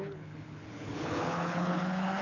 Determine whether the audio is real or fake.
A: fake